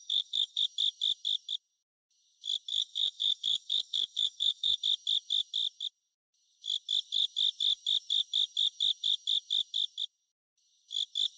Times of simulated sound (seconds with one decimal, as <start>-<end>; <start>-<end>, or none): 0.0-0.6; 2.7-4.8